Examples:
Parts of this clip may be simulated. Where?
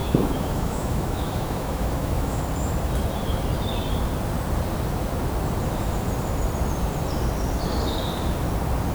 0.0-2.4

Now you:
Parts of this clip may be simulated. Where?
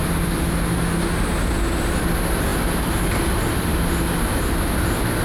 none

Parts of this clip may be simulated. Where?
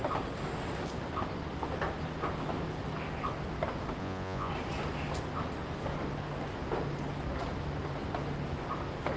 4.0-4.5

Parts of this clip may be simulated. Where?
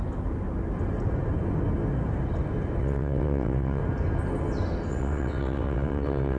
2.8-3.8; 4.9-6.4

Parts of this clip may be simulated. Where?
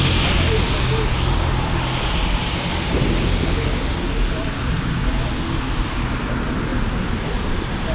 6.7-7.9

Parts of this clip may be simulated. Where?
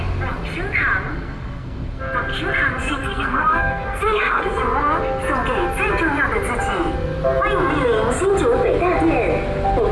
1.1-2.0; 2.8-4.6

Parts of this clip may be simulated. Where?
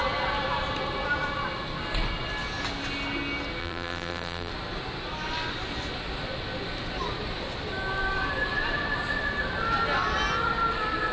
3.6-4.5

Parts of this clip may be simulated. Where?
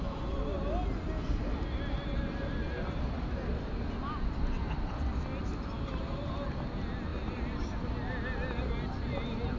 7.1-7.9